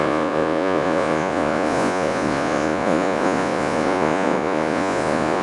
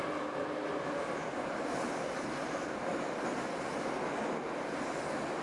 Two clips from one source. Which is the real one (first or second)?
second